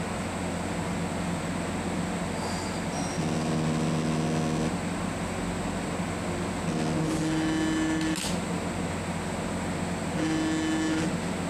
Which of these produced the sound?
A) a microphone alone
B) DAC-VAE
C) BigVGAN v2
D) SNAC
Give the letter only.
A